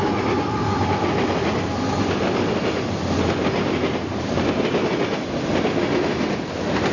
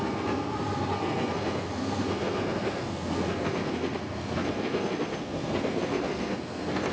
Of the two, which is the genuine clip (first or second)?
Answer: first